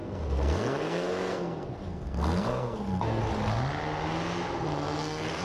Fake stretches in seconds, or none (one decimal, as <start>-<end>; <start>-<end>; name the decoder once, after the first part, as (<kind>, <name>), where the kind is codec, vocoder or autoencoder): 0.0-3.2 (codec, SNAC); 4.7-5.4